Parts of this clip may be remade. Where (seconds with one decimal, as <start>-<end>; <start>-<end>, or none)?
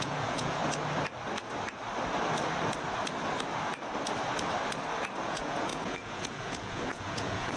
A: 0.0-0.6; 5.2-7.6